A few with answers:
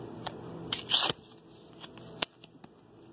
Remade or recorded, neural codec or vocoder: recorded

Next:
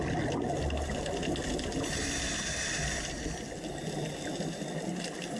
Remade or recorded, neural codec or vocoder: recorded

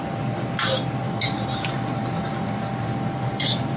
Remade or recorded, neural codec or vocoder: recorded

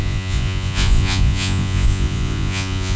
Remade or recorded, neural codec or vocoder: remade, vocoder, Vocos